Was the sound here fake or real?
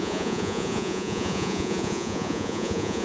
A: fake